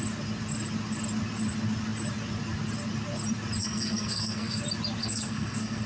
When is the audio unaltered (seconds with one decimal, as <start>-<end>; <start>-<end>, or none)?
0.0-3.6; 4.6-5.0